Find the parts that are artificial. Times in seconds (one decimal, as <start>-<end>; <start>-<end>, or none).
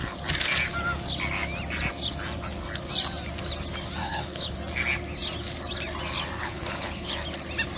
4.0-4.6; 6.4-7.1